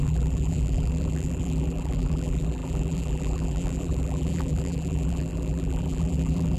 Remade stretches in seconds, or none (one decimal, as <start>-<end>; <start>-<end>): 0.0-6.6